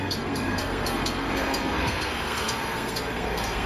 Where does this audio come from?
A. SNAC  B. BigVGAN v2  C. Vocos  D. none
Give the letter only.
A